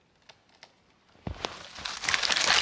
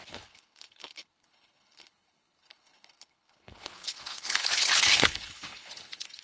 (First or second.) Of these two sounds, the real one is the first